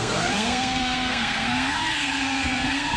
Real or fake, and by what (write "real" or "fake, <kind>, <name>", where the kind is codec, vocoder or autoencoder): fake, codec, SNAC